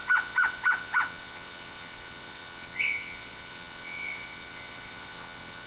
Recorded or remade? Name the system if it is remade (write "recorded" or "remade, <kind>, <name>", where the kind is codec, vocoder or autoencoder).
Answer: remade, vocoder, WaveNeXt